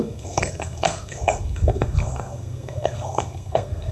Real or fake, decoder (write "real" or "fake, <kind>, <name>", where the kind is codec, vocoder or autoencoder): fake, codec, SNAC